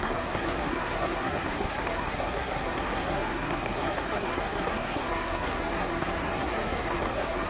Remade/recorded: remade